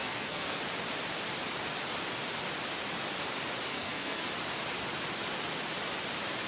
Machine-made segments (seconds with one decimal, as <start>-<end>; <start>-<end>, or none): 0.0-0.6; 3.7-4.3